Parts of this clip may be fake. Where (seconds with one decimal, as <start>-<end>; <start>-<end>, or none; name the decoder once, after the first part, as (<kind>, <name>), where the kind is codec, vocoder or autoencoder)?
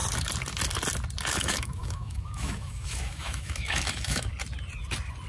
1.3-4.3 (autoencoder, DAC-VAE)